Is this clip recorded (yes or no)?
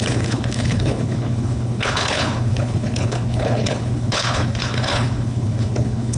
no